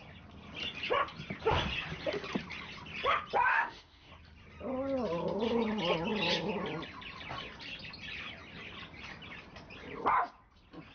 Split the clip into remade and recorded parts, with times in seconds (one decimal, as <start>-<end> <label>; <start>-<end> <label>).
0.0-3.5 recorded; 3.5-4.1 remade; 4.1-10.9 recorded